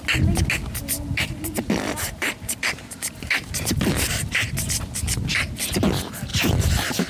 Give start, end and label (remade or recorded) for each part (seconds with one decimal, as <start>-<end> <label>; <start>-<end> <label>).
0.0-1.1 recorded; 1.1-4.5 remade; 4.5-6.3 recorded; 6.3-7.1 remade